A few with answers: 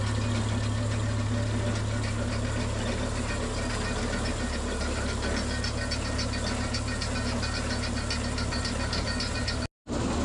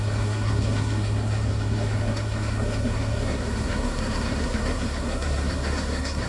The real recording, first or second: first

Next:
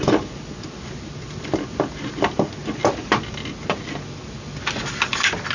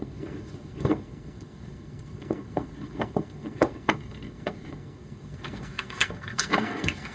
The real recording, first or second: first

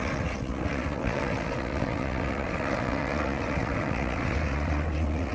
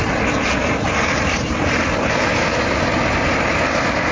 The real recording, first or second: second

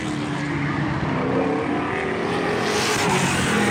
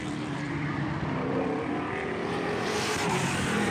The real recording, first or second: first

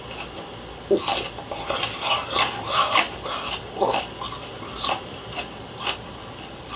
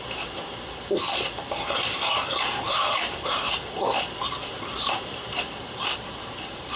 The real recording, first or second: first